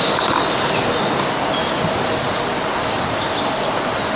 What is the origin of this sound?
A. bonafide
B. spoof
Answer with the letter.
A